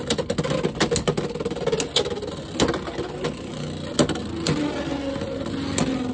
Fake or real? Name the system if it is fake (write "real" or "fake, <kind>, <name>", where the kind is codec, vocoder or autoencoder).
real